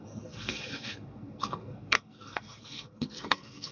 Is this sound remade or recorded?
remade